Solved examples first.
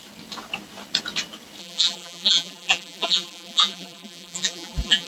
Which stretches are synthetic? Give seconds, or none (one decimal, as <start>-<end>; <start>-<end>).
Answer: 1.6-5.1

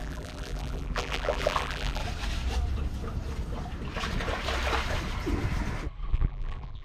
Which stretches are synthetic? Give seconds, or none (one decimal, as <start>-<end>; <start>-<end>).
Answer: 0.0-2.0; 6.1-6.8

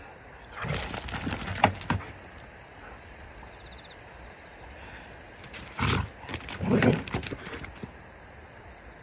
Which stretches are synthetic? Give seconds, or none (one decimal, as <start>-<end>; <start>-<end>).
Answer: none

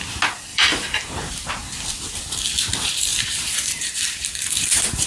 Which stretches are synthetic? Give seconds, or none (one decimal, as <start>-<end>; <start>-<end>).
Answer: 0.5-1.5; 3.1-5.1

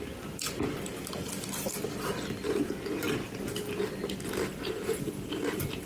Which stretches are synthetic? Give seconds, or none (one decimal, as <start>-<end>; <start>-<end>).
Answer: 4.4-5.9

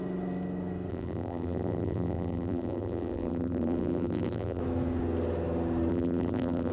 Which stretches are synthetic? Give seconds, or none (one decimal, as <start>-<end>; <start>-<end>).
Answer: 0.9-4.6; 5.9-6.7

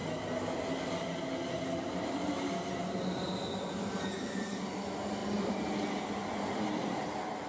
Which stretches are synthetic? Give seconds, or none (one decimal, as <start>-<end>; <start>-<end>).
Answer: none